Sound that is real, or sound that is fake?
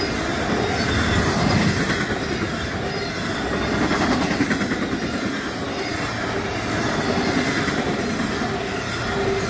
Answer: real